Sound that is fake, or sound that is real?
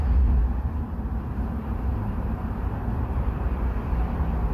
fake